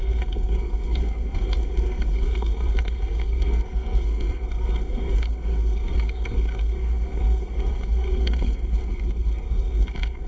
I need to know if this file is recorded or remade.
remade